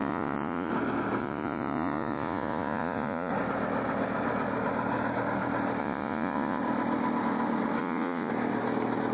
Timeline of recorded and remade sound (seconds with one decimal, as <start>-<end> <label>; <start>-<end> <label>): 0.0-0.7 remade; 0.7-1.2 recorded; 1.2-3.3 remade; 3.3-5.8 recorded; 5.8-6.6 remade; 6.6-7.8 recorded; 7.8-8.3 remade; 8.3-9.1 recorded